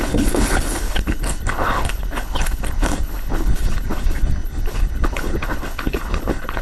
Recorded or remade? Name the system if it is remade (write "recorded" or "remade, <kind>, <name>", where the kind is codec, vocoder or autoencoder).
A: remade, codec, HILCodec